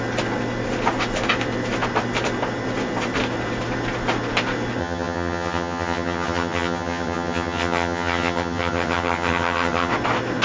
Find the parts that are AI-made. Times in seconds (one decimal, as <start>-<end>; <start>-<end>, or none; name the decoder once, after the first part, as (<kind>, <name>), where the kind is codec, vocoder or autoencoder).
4.8-9.9 (vocoder, HiFi-GAN)